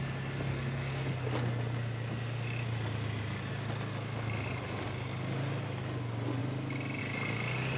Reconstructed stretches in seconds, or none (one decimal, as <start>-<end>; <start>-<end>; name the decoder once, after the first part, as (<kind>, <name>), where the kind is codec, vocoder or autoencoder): 0.5-1.1 (codec, SNAC)